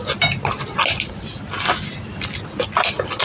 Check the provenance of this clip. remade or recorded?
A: recorded